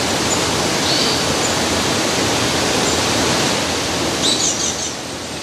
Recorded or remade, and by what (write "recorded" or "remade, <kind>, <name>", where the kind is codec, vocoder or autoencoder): recorded